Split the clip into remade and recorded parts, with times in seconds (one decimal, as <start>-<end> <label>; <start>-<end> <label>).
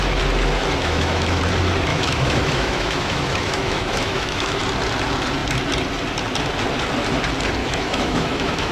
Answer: 0.0-0.8 recorded; 0.8-1.4 remade; 1.4-1.9 recorded; 1.9-4.6 remade; 4.6-7.6 recorded; 7.6-8.7 remade